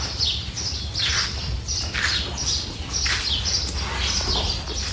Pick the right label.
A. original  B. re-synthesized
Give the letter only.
A